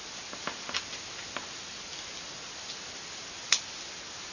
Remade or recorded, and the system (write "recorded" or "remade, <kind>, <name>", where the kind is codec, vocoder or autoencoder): recorded